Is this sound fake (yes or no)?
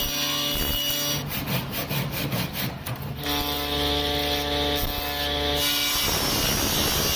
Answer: no